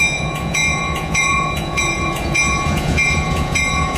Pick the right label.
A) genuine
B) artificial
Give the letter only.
B